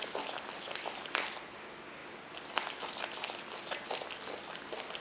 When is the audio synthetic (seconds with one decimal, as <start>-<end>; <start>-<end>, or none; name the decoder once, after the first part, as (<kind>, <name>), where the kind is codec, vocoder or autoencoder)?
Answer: none